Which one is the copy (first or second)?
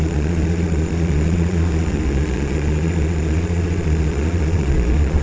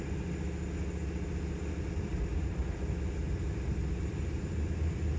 first